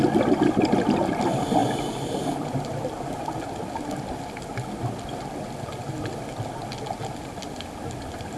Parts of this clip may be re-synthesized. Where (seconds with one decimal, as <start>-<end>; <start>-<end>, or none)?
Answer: none